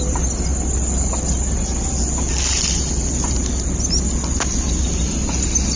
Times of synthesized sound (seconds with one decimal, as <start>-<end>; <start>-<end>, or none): none